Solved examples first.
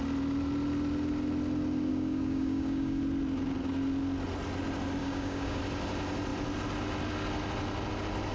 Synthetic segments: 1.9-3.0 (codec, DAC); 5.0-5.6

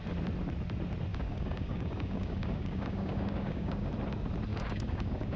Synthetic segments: 1.1-3.9 (codec, DAC); 4.5-5.4

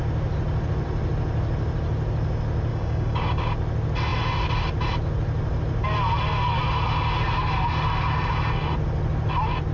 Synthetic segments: 2.7-3.5 (codec, DAC)

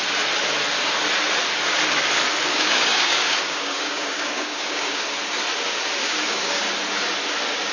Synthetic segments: 2.5-5.0 (codec, DAC); 6.0-6.6

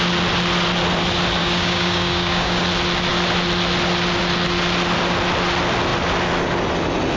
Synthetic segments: 1.4-2.6 (codec, DAC)

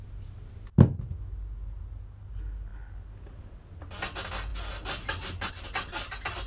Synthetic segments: none

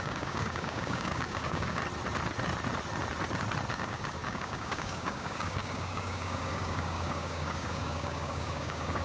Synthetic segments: 0.0-1.8 (codec, DAC); 3.7-9.0

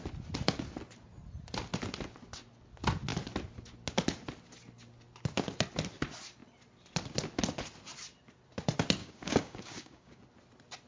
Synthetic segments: 9.0-10.2 (codec, DAC)